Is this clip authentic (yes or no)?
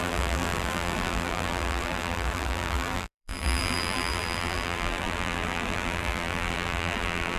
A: no